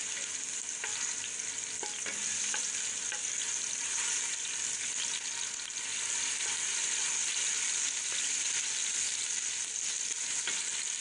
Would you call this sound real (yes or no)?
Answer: yes